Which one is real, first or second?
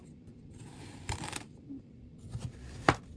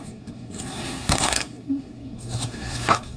first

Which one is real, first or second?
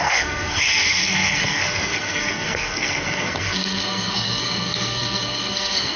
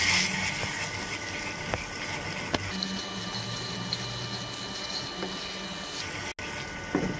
second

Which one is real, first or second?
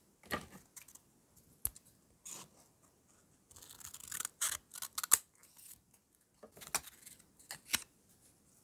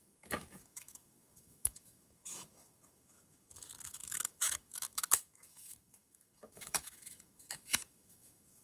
first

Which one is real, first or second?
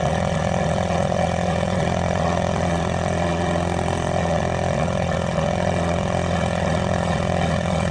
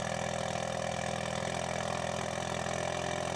second